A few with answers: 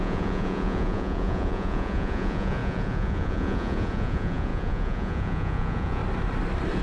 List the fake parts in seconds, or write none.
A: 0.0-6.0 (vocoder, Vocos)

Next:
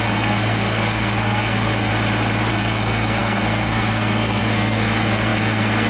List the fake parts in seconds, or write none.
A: 0.0-1.9 (codec, SNAC); 2.5-5.9

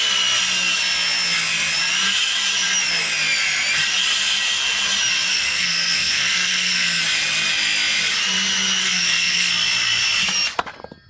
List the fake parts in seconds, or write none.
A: 5.3-7.0 (codec, SNAC); 8.8-9.5